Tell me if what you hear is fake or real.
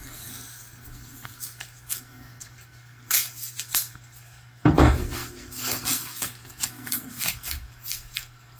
fake